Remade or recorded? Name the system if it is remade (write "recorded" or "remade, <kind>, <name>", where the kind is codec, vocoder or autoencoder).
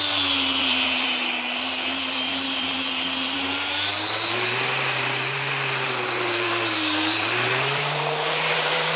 remade, vocoder, BigVGAN v2